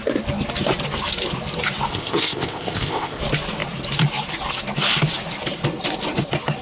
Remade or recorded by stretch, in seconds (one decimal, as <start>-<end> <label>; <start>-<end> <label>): 0.0-1.9 recorded; 1.9-3.2 remade; 3.2-6.6 recorded